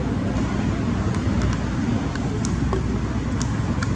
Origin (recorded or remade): recorded